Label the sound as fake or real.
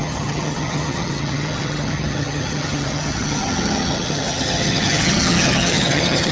fake